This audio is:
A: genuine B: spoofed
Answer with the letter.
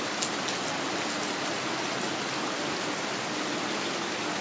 A